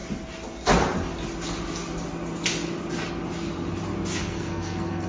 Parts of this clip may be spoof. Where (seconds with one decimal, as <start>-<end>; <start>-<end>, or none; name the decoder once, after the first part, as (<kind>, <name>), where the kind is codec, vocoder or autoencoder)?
4.2-5.1 (codec, SNAC)